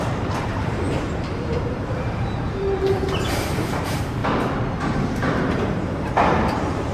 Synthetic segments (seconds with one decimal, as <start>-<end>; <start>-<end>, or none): 0.0-4.2; 4.7-6.9